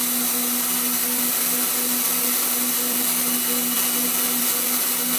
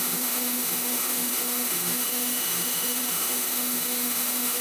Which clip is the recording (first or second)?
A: first